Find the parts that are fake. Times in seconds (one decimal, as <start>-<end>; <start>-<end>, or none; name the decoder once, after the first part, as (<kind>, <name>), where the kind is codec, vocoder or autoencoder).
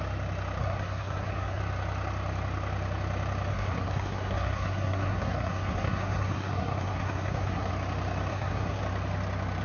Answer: 0.6-1.6 (codec, SNAC); 3.5-7.7; 8.3-8.8